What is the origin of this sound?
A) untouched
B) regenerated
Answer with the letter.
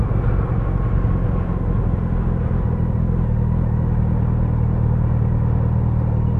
A